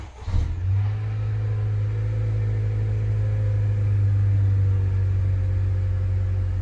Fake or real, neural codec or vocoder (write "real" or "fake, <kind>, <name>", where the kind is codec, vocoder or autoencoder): real